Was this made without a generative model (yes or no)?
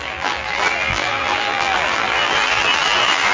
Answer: no